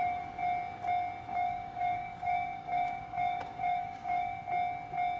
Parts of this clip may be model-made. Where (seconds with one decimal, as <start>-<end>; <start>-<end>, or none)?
1.3-4.4

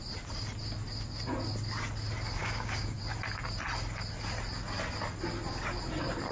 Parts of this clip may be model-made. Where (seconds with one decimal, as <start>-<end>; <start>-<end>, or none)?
2.4-3.0

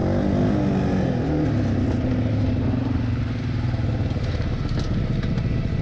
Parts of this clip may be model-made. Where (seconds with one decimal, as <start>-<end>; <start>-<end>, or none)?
none

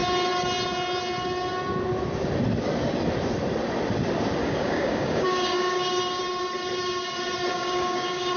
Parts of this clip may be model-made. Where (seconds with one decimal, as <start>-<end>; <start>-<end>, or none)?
4.4-6.2; 7.5-8.4

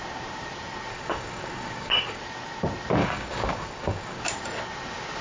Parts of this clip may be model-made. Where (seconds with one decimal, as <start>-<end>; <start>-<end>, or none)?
0.9-2.2; 3.0-4.2

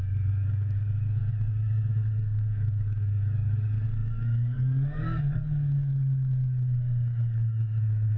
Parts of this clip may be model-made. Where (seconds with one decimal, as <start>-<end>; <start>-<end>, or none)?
0.0-8.2

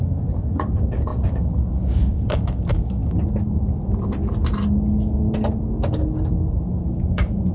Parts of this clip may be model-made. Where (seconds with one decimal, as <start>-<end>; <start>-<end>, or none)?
0.0-3.0; 6.9-7.5